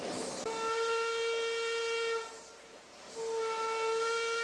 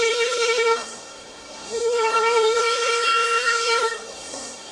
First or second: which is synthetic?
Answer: second